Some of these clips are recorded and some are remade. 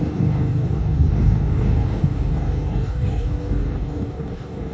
remade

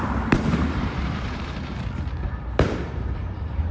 remade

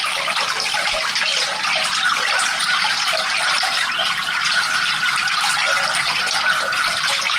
recorded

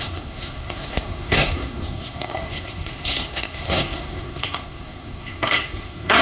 remade